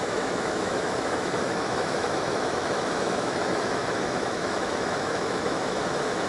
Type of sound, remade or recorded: remade